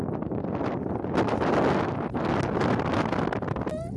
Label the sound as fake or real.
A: real